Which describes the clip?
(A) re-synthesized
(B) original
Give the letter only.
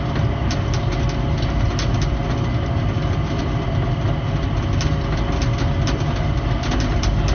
B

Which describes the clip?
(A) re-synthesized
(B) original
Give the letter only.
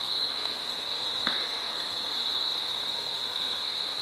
A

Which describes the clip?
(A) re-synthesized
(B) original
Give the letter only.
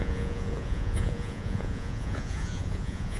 A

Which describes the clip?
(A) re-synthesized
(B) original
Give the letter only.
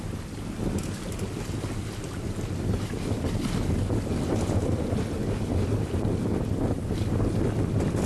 B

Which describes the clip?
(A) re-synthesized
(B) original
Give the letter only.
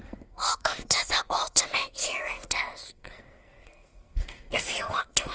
A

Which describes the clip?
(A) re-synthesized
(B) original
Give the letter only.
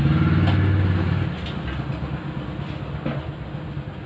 B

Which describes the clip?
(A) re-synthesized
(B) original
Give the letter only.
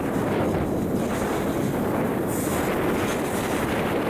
B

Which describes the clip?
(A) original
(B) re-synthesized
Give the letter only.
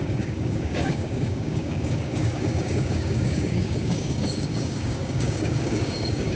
B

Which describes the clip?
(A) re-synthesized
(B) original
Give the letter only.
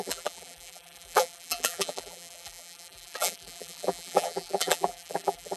A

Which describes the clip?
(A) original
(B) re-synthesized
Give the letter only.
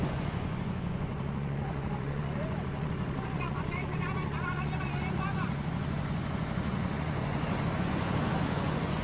B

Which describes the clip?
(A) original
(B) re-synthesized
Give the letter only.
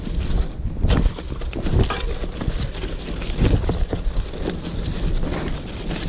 A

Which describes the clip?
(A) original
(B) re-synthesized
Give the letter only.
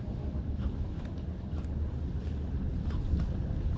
A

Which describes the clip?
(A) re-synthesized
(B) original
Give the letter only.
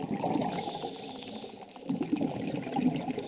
B